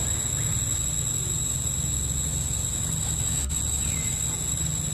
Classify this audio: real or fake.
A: real